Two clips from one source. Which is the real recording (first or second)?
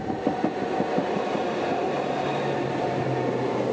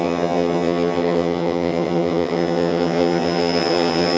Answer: first